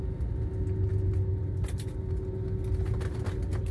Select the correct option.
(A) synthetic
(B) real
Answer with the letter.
B